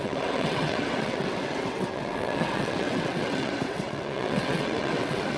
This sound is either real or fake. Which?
fake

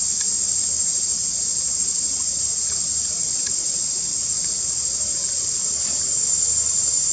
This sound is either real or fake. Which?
real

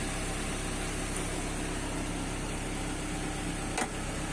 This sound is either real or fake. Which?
real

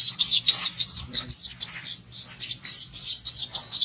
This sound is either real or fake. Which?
real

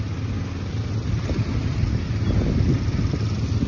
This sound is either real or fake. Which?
real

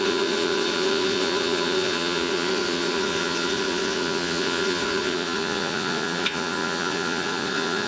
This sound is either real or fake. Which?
fake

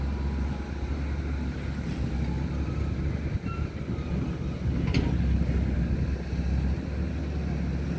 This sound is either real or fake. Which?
real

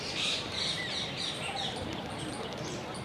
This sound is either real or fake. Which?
fake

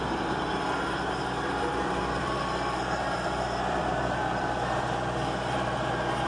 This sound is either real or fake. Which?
fake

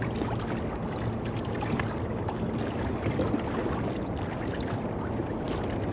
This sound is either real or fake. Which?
real